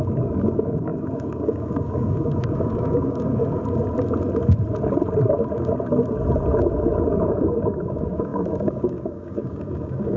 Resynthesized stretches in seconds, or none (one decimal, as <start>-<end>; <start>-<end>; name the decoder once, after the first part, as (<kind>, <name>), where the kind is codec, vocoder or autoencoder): 0.0-3.4 (codec, DAC); 7.1-10.2